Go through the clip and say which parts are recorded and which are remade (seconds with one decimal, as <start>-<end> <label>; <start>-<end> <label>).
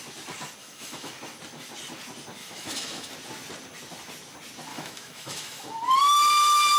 0.0-0.6 recorded; 0.6-1.1 remade; 1.1-2.4 recorded; 2.4-3.1 remade; 3.1-4.7 recorded; 4.7-5.7 remade; 5.7-6.8 recorded